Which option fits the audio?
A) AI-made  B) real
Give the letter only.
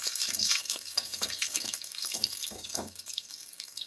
A